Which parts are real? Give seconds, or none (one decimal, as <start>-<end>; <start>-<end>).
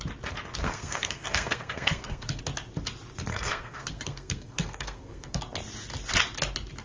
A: 0.0-0.6; 2.4-3.3; 5.4-6.8